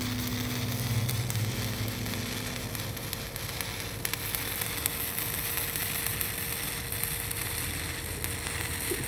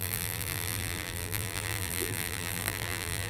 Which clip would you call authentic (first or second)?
first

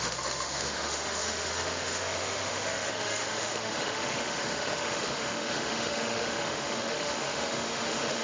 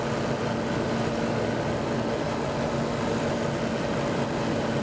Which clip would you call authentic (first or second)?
second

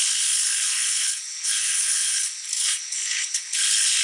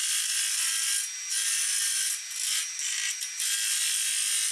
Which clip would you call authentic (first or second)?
second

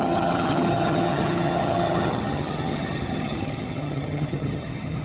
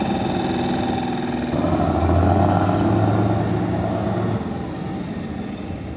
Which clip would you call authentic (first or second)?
second